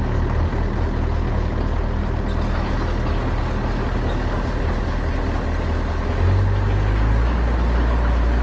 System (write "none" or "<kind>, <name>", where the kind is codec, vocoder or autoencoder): none